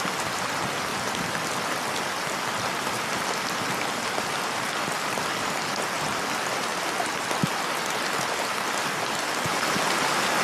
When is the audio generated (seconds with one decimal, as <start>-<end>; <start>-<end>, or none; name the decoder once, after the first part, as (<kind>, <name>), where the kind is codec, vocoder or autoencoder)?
none